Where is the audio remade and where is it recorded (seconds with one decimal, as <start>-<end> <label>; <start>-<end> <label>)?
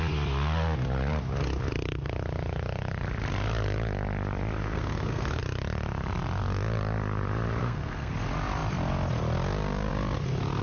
0.0-4.6 recorded; 4.6-5.4 remade; 5.4-7.6 recorded; 7.6-8.1 remade; 8.1-10.6 recorded